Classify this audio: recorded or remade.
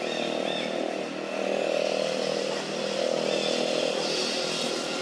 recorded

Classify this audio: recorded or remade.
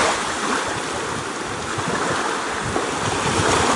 recorded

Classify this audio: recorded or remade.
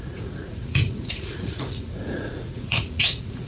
remade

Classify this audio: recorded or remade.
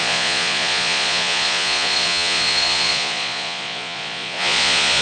remade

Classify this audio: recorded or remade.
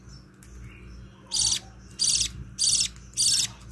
recorded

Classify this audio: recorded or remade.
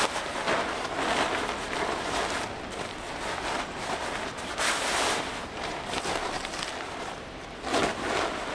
recorded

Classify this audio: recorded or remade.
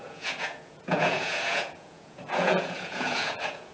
remade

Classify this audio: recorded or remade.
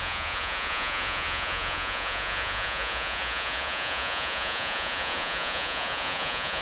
remade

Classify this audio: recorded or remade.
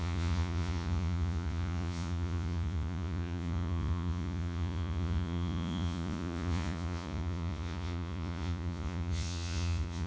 remade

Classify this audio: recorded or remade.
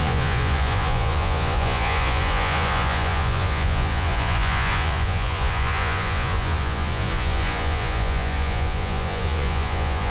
remade